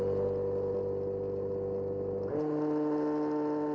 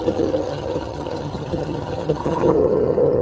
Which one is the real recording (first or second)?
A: first